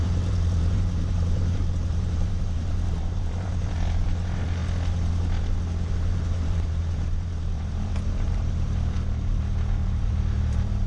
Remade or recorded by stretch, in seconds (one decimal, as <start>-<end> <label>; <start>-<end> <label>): 0.0-4.6 remade; 4.6-5.9 recorded; 5.9-10.9 remade